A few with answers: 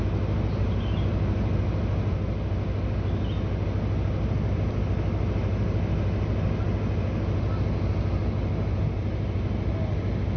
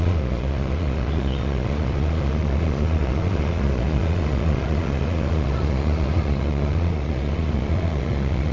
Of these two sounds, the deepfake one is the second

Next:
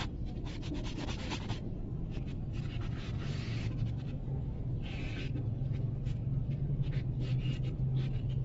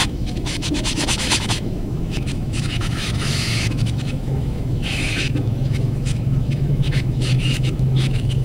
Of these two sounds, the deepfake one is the second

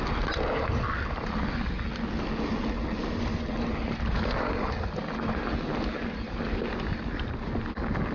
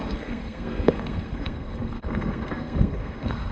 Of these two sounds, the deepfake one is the second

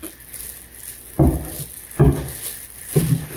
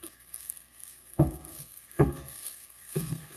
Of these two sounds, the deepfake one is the second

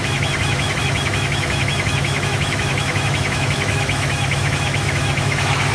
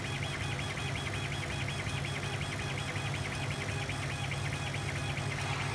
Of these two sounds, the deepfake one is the first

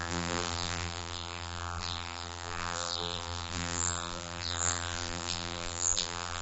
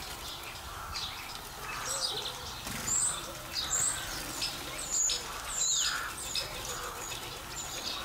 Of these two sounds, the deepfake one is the first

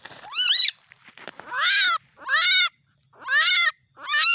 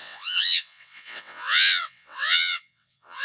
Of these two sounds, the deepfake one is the second